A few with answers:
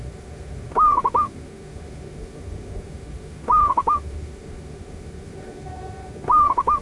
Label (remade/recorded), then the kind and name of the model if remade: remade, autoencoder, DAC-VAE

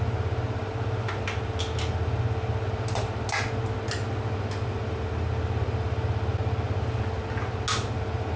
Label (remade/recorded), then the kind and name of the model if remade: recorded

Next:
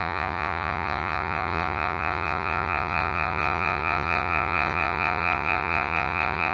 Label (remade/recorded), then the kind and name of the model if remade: remade, vocoder, Vocos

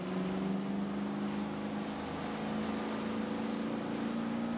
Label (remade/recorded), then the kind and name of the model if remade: recorded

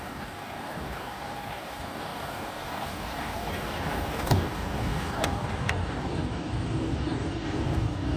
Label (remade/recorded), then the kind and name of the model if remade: remade, codec, DAC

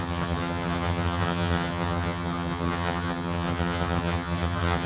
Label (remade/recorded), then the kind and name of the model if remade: remade, vocoder, HiFi-GAN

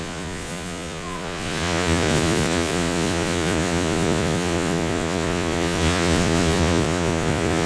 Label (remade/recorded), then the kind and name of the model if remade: remade, vocoder, Vocos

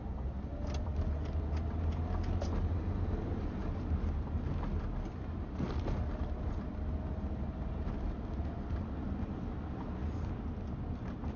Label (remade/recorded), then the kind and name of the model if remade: recorded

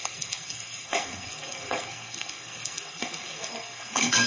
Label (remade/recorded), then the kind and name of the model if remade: remade, codec, SNAC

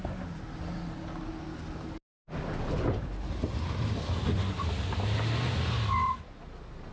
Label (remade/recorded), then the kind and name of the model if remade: recorded